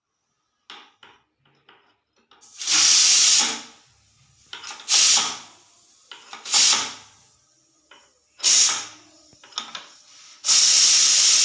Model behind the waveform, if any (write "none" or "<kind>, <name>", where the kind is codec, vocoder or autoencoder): none